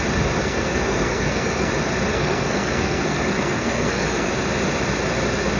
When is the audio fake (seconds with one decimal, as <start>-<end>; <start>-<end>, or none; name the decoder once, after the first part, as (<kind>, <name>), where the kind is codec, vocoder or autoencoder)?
0.4-1.7 (codec, SNAC); 2.1-4.3